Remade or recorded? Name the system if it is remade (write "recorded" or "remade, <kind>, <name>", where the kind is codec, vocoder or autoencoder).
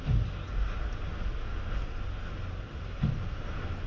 recorded